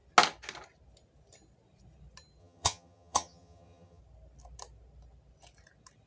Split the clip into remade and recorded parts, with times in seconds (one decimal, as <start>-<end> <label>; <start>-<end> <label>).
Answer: 0.0-2.4 recorded; 2.4-4.0 remade; 4.0-6.1 recorded